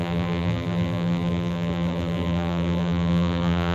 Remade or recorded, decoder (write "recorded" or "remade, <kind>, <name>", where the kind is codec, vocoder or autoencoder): remade, vocoder, BigVGAN v2